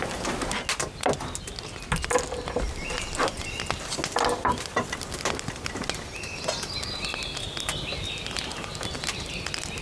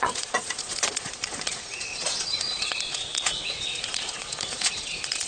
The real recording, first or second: first